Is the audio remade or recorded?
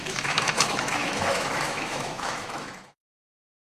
remade